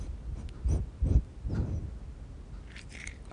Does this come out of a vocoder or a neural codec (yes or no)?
no